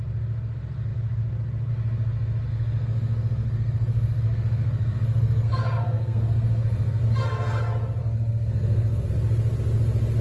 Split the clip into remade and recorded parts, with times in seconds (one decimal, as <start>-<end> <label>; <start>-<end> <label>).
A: 0.0-2.5 recorded; 2.5-7.0 remade; 7.0-8.0 recorded; 8.0-9.1 remade; 9.1-10.2 recorded